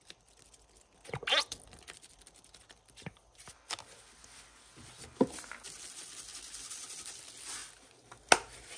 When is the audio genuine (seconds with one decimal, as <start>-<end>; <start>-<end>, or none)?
0.0-8.8